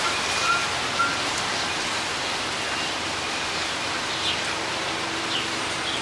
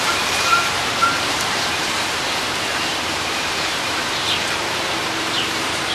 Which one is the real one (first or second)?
first